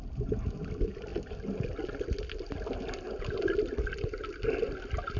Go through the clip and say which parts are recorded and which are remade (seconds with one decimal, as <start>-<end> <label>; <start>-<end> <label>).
0.0-5.2 recorded